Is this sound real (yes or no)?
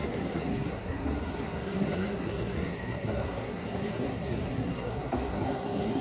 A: no